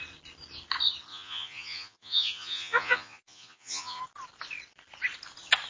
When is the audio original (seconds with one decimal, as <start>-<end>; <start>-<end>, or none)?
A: 0.0-1.1; 4.0-5.7